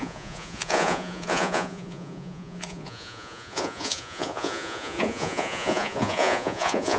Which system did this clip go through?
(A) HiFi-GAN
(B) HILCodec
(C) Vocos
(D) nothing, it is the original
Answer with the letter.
C